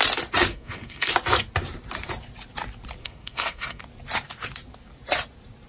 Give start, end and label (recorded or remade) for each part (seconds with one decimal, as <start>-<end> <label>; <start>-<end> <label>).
0.0-0.5 recorded; 0.5-1.1 remade; 1.1-3.0 recorded; 3.0-3.8 remade; 3.8-5.7 recorded

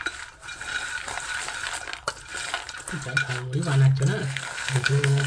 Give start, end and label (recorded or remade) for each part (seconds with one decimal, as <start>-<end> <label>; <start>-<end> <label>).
0.0-4.2 recorded; 4.2-5.3 remade